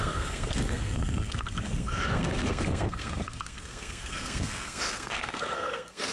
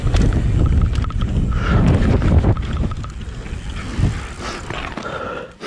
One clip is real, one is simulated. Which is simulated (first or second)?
first